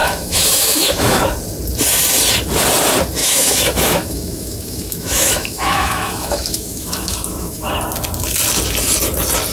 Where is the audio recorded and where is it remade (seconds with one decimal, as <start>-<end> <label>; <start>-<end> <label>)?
0.0-1.2 remade; 1.2-3.2 recorded; 3.2-7.7 remade; 7.7-9.5 recorded